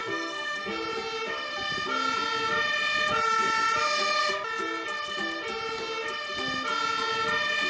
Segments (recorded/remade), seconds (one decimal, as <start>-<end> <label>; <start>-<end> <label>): 0.0-0.7 remade; 0.7-7.7 recorded